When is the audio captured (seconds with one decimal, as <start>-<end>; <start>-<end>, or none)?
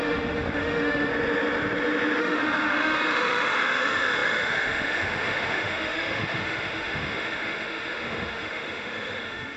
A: 1.1-2.2